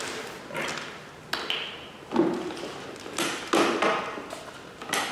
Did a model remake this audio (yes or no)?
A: no